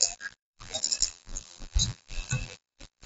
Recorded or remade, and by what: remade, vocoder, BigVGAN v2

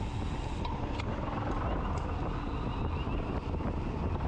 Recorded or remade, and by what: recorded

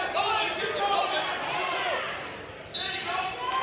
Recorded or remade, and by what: recorded